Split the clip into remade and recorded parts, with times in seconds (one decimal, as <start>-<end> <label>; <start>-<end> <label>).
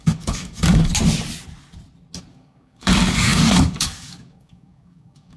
0.0-0.9 remade; 0.9-2.3 recorded; 2.3-5.4 remade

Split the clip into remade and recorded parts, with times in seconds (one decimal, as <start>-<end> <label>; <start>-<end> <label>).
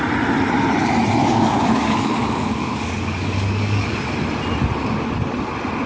0.0-1.2 recorded; 1.2-4.1 remade; 4.1-5.9 recorded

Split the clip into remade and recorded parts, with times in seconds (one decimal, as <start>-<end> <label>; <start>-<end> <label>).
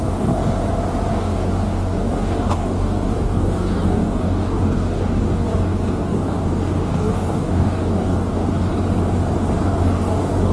0.0-0.4 remade; 0.4-1.1 recorded; 1.1-8.7 remade; 8.7-9.6 recorded; 9.6-10.5 remade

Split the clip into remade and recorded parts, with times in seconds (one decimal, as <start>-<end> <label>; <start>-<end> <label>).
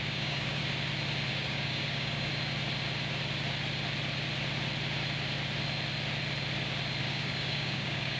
0.0-0.6 remade; 0.6-1.3 recorded; 1.3-2.3 remade; 2.3-7.0 recorded; 7.0-8.2 remade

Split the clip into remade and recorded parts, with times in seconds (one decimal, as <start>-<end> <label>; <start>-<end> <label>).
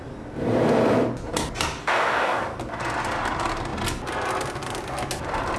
0.0-1.8 recorded; 1.8-2.4 remade; 2.4-5.6 recorded